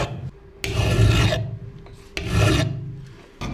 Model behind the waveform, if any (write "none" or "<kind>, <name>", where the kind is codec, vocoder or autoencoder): none